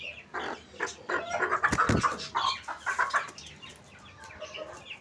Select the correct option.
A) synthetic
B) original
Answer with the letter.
B